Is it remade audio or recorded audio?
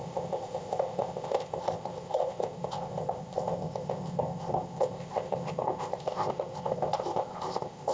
remade